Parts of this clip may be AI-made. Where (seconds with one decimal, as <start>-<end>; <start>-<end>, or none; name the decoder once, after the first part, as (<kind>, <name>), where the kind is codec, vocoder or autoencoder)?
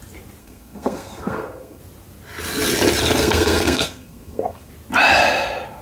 0.4-1.8 (codec, SNAC); 3.2-4.7